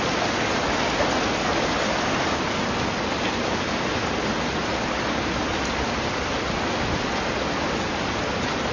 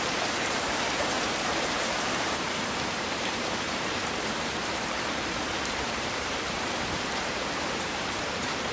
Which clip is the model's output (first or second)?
second